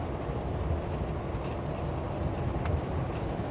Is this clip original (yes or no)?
yes